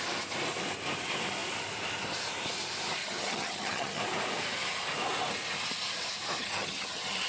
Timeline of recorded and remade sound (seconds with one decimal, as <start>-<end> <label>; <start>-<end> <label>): 0.0-3.0 recorded; 3.0-4.0 remade; 4.0-6.4 recorded; 6.4-7.3 remade